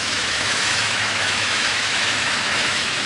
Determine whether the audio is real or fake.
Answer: fake